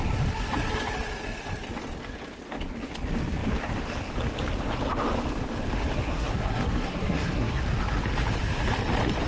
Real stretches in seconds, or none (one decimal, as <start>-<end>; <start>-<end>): 0.0-6.1; 7.6-9.3